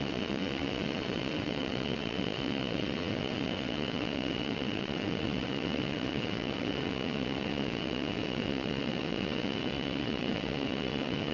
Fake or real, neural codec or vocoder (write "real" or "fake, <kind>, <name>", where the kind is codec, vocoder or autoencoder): fake, vocoder, WaveNeXt